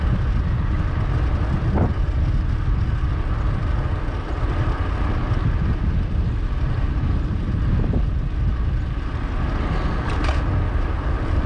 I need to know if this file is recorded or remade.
recorded